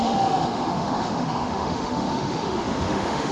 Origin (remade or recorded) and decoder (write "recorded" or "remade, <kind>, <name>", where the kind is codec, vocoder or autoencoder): remade, autoencoder, DAC-VAE